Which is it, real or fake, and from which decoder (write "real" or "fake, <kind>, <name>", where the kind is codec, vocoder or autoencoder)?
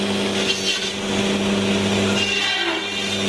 real